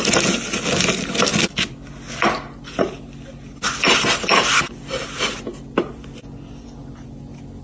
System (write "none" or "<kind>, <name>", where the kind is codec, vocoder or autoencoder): none